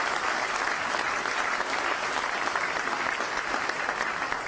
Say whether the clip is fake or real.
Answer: real